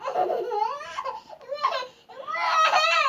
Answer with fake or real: real